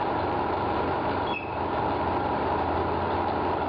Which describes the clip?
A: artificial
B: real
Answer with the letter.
A